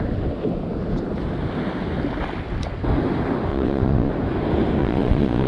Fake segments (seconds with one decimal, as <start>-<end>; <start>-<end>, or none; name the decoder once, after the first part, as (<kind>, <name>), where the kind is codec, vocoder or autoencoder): 3.5-4.1 (vocoder, Vocos); 4.8-5.5